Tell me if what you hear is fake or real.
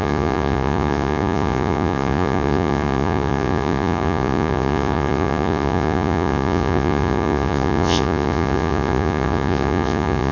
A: fake